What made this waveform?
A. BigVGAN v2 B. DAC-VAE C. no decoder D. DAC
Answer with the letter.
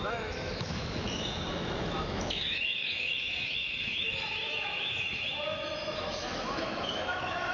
B